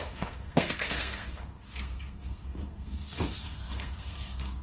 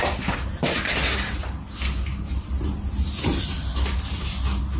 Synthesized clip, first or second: first